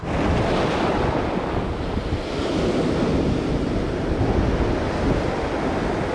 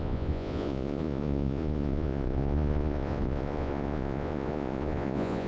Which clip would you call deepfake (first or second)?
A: second